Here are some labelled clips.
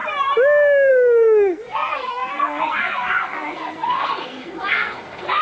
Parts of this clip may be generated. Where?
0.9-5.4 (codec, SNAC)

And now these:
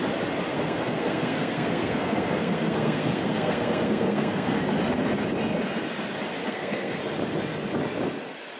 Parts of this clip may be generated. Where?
0.5-4.6 (codec, SNAC); 6.4-7.0

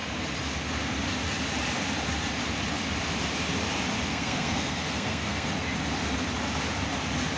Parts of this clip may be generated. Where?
4.1-5.5 (codec, SNAC)

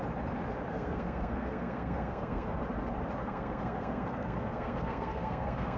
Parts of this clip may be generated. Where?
0.7-2.6 (codec, SNAC); 3.2-5.8

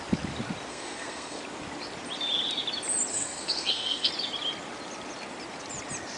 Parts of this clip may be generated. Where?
0.7-1.4 (codec, SNAC); 3.1-4.1